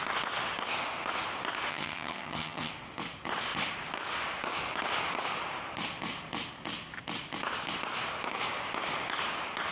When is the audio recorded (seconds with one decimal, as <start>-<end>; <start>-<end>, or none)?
0.0-1.7; 2.7-9.7